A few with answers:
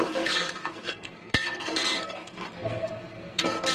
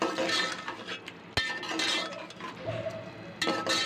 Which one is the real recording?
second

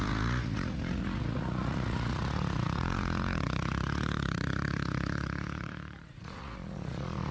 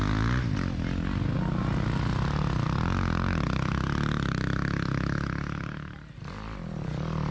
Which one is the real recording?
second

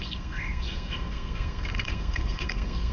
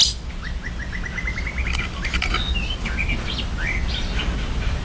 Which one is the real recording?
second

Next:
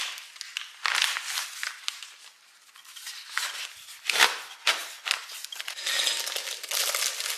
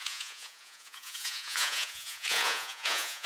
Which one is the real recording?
first